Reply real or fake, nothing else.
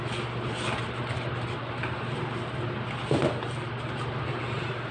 real